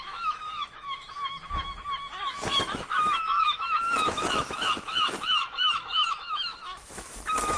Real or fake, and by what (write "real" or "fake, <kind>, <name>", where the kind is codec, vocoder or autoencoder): fake, autoencoder, DAC-VAE